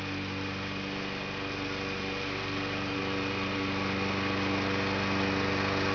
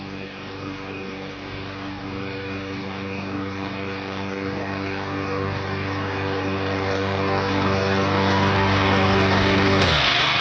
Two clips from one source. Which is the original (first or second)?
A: first